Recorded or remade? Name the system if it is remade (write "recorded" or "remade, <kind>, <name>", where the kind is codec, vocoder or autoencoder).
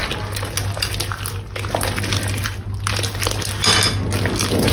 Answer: recorded